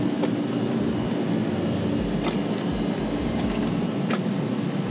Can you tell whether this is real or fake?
real